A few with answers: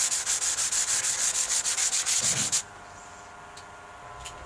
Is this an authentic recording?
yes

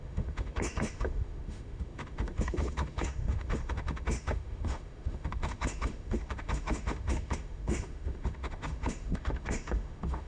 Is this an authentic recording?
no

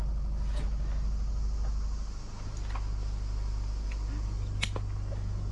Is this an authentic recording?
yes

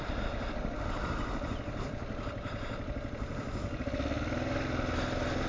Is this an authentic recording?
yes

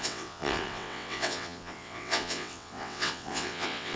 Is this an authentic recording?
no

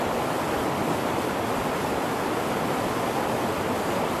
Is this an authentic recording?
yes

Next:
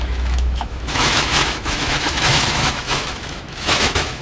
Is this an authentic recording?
no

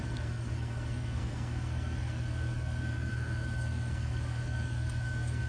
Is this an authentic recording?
no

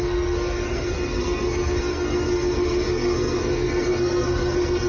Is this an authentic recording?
no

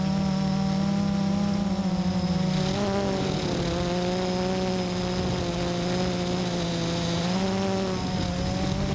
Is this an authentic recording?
yes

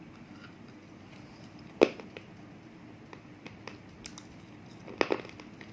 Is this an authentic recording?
yes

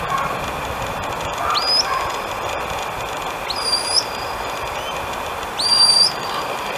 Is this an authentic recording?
yes